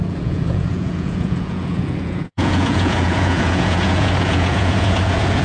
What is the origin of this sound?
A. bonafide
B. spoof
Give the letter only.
B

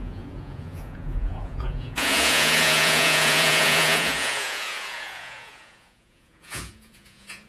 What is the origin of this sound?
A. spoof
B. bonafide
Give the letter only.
A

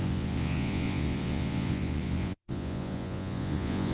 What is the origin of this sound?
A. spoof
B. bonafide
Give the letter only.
A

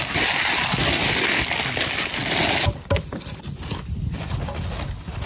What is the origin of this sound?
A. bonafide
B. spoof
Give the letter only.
A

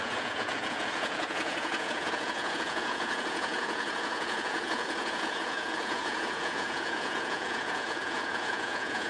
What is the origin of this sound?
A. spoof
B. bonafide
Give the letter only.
A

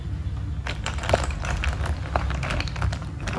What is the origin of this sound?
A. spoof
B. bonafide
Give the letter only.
B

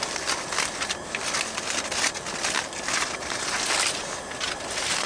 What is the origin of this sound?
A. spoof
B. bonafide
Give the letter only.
B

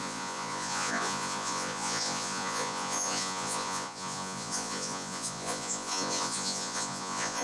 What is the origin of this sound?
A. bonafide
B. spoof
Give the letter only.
B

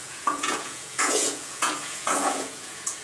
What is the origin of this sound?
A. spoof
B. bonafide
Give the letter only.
A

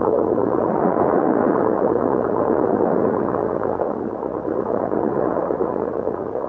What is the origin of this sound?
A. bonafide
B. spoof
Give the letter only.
B